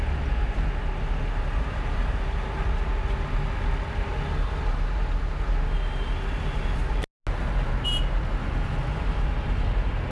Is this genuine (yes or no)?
yes